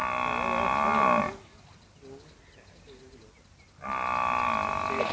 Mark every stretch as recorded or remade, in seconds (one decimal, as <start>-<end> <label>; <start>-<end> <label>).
0.0-5.1 recorded